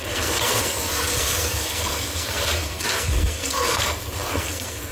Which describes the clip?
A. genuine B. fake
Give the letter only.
B